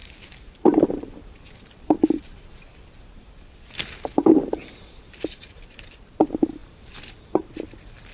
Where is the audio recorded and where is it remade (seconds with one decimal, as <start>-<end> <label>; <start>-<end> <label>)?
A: 0.0-2.3 remade; 2.3-4.1 recorded; 4.1-5.8 remade; 5.8-6.6 recorded; 6.6-7.5 remade; 7.5-8.1 recorded